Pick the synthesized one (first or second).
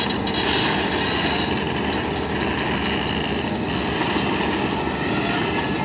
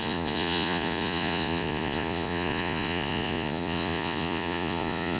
second